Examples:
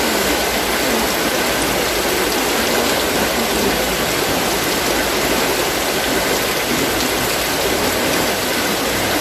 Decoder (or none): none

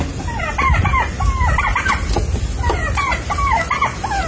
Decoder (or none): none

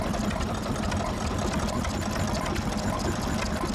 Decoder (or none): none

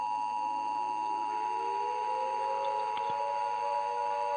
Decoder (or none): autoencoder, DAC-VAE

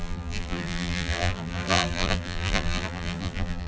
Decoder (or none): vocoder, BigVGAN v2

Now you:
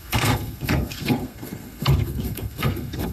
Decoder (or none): codec, SNAC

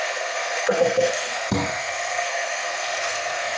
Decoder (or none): codec, SNAC